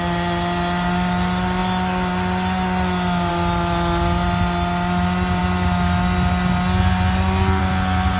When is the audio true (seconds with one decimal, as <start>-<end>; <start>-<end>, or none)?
0.0-8.2